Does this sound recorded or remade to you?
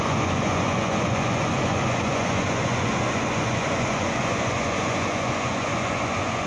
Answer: remade